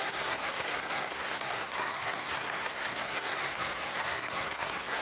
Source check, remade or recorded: remade